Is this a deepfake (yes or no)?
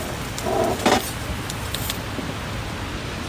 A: no